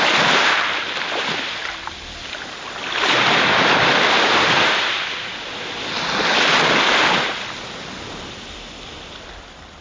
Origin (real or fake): real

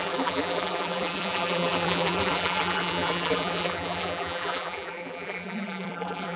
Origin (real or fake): fake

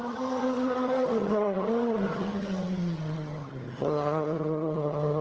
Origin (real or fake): fake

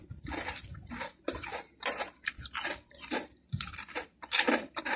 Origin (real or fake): fake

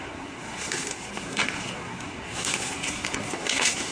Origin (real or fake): fake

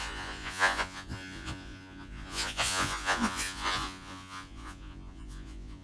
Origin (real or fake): fake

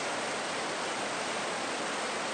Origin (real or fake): real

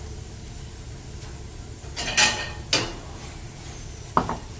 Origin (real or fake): real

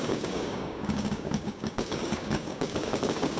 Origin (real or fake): fake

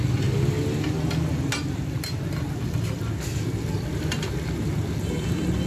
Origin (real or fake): real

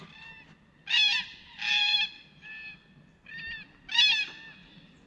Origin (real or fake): real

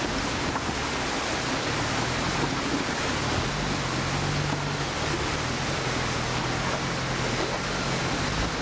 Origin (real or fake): real